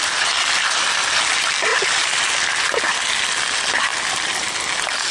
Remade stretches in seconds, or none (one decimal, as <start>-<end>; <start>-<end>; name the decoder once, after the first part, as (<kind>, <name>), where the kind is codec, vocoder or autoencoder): none